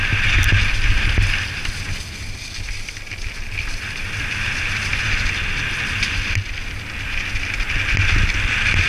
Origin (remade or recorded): recorded